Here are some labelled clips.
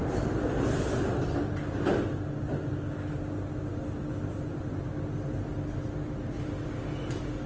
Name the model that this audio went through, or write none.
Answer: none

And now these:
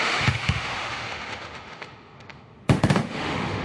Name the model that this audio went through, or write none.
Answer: autoencoder, DAC-VAE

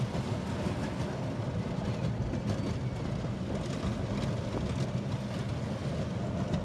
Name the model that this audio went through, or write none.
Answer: none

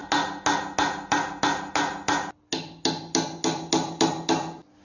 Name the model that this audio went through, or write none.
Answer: none